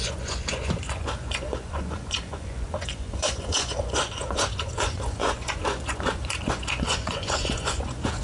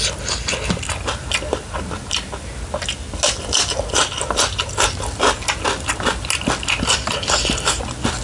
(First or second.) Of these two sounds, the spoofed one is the first